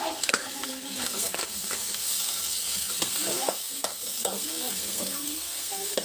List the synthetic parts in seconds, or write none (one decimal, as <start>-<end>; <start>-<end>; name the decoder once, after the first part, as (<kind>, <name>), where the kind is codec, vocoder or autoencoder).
0.0-6.0 (codec, SNAC)